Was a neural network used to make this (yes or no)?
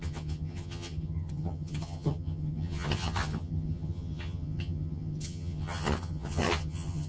yes